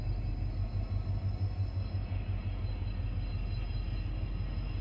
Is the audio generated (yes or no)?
no